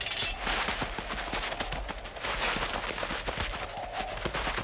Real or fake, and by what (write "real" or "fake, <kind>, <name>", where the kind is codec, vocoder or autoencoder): real